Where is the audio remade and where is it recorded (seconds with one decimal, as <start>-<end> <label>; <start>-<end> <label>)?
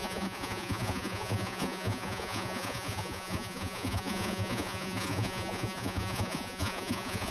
0.0-7.3 remade